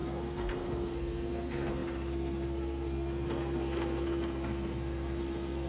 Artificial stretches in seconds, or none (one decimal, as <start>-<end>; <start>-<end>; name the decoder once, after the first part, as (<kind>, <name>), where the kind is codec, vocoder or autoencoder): 0.0-5.7 (codec, SNAC)